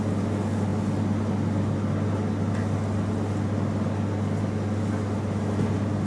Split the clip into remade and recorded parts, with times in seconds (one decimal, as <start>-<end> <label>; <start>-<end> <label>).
0.0-6.1 recorded

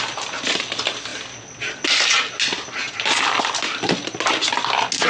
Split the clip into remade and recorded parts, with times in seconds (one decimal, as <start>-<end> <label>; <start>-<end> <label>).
0.0-5.1 recorded

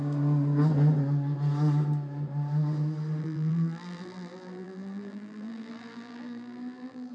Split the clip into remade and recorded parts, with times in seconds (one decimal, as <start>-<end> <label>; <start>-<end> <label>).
0.0-3.2 recorded; 3.2-7.1 remade

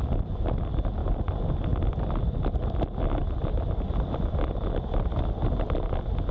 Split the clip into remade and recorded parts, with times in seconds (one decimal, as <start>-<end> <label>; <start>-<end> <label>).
0.0-1.0 recorded; 1.0-1.9 remade; 1.9-3.2 recorded; 3.2-5.1 remade; 5.1-6.3 recorded

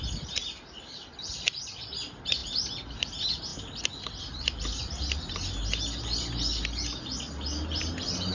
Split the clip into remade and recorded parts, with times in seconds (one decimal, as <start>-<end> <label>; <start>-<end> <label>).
0.0-8.3 recorded

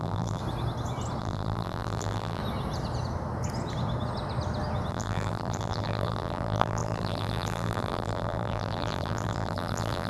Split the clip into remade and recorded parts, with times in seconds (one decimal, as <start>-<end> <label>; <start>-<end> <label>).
0.0-0.4 remade; 0.4-1.2 recorded; 1.2-2.4 remade; 2.4-4.9 recorded; 4.9-10.1 remade

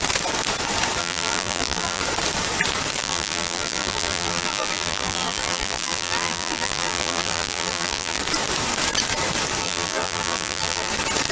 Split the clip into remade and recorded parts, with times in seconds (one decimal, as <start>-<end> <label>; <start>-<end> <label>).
0.0-1.0 recorded; 1.0-2.0 remade; 2.0-3.0 recorded; 3.0-8.2 remade; 8.2-9.6 recorded; 9.6-10.9 remade; 10.9-11.3 recorded

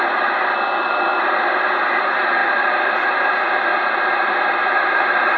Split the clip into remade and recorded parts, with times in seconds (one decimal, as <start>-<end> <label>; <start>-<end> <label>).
0.0-2.4 recorded; 2.4-3.3 remade; 3.3-5.4 recorded